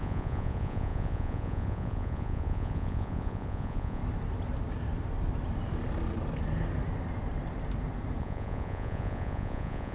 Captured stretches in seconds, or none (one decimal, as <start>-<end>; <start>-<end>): 4.0-8.2